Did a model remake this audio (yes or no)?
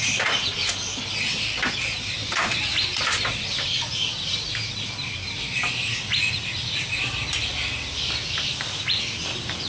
no